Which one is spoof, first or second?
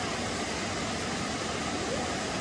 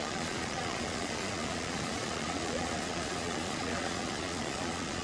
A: second